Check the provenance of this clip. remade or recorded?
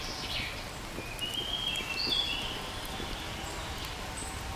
recorded